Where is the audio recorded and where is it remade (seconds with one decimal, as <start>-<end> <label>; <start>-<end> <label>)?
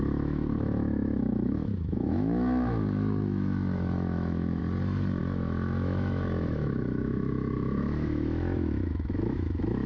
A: 0.0-4.6 remade; 4.6-5.2 recorded; 5.2-9.9 remade